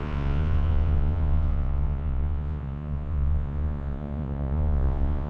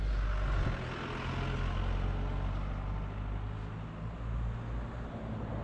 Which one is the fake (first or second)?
first